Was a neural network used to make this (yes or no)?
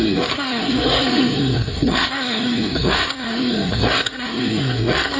yes